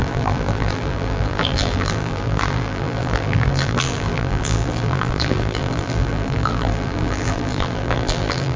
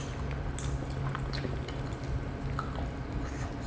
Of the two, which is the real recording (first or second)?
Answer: second